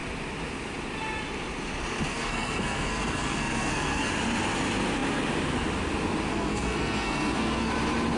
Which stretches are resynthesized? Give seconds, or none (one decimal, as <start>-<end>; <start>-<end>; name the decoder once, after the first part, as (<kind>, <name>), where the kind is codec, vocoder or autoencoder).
2.1-4.1 (codec, SNAC); 6.3-7.7